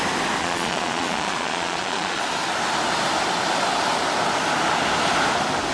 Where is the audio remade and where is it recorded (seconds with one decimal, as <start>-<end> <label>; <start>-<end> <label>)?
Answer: 0.0-0.4 recorded; 0.4-2.2 remade; 2.2-5.7 recorded